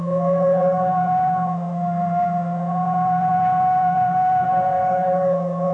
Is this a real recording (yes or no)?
no